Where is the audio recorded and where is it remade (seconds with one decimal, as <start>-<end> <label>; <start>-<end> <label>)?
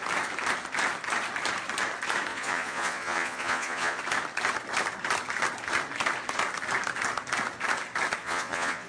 0.0-2.3 recorded; 2.3-4.0 remade; 4.0-8.2 recorded; 8.2-8.9 remade